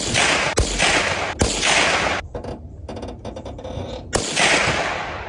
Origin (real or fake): real